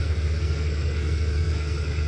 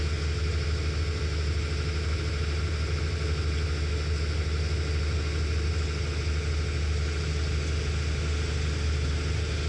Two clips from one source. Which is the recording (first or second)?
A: second